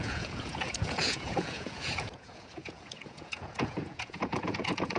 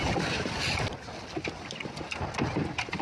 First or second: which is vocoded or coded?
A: first